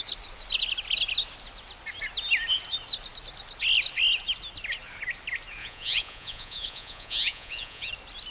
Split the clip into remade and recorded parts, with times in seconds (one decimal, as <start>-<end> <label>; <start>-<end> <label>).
0.0-5.6 recorded; 5.6-7.9 remade; 7.9-8.3 recorded